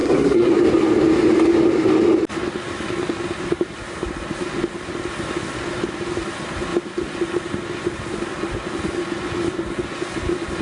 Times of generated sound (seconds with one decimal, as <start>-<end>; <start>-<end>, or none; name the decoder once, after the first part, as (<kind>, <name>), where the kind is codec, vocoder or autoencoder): 0.0-0.5 (codec, SNAC)